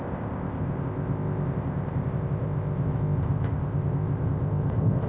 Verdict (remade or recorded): remade